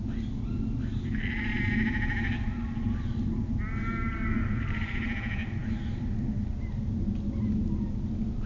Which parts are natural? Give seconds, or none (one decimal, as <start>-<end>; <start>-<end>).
0.0-8.5